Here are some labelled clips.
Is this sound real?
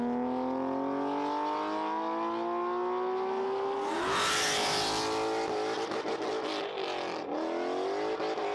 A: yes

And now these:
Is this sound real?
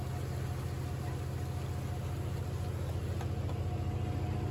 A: yes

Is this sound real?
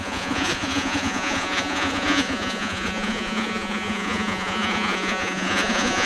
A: no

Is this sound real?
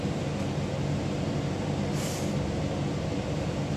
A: yes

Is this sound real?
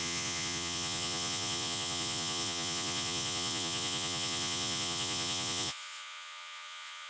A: no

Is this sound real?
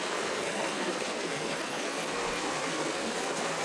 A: no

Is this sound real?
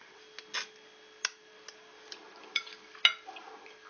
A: yes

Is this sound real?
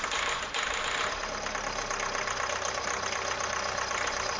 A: yes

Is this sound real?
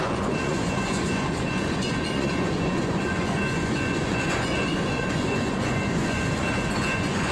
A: no